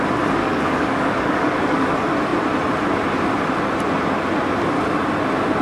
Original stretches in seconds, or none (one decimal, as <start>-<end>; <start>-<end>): 0.0-0.4; 1.9-5.6